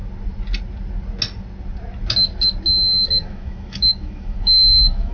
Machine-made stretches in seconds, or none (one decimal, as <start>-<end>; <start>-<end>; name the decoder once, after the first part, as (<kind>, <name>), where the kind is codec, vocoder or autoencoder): 3.1-5.1 (autoencoder, DAC-VAE)